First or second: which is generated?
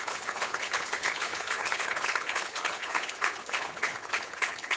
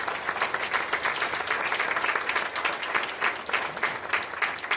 first